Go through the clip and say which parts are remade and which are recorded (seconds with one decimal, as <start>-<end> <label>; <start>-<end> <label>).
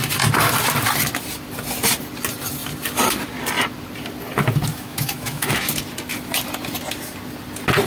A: 0.0-4.7 recorded; 4.7-5.8 remade; 5.8-7.9 recorded